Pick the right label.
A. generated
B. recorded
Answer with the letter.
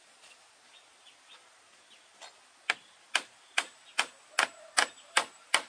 B